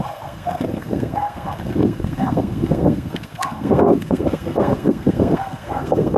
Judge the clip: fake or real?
fake